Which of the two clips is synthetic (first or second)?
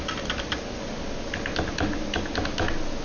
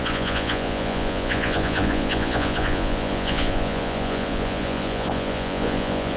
second